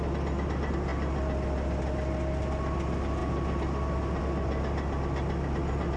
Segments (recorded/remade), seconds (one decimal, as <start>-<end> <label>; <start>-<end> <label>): 0.0-6.0 recorded